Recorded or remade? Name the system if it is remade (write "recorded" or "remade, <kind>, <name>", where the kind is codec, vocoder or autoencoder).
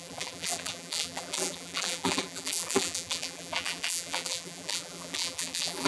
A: remade, vocoder, BigVGAN v2